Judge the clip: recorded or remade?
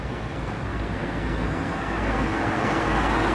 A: remade